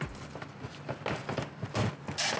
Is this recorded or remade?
recorded